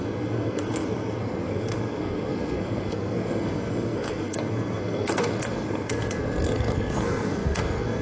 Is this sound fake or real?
fake